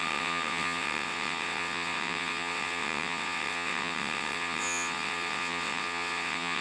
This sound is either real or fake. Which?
fake